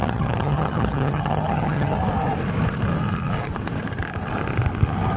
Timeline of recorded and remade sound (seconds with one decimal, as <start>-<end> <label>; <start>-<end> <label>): 0.0-2.0 remade; 2.0-5.2 recorded

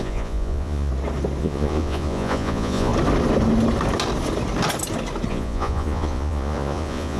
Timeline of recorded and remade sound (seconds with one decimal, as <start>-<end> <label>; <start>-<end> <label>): 0.0-0.9 remade; 0.9-1.4 recorded; 1.4-2.9 remade; 2.9-5.3 recorded; 5.3-7.2 remade

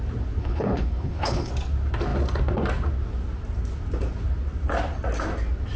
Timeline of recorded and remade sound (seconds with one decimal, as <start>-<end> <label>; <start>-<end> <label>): 0.0-0.4 recorded; 0.4-1.5 remade; 1.5-5.8 recorded

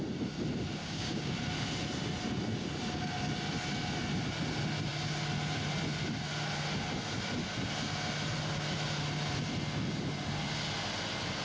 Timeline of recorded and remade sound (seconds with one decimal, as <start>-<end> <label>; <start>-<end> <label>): 0.0-0.8 recorded; 0.8-1.3 remade; 1.3-11.4 recorded

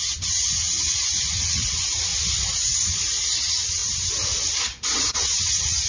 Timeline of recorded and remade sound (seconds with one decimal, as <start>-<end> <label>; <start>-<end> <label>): 0.0-2.1 remade; 2.1-2.9 recorded; 2.9-3.8 remade; 3.8-5.0 recorded; 5.0-5.9 remade

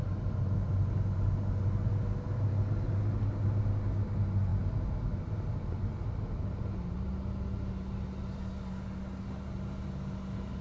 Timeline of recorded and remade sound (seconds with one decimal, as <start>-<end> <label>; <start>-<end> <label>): 0.0-10.6 recorded

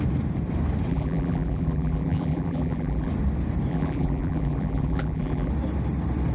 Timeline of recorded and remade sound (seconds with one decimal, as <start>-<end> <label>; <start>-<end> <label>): 0.0-0.9 recorded; 0.9-3.1 remade; 3.1-3.7 recorded; 3.7-5.5 remade; 5.5-6.3 recorded

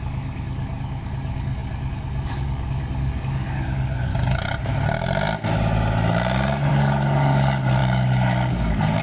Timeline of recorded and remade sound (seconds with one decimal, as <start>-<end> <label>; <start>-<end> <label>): 0.0-4.1 remade; 4.1-6.7 recorded; 6.7-9.0 remade